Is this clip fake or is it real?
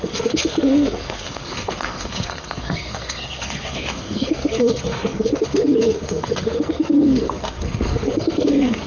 fake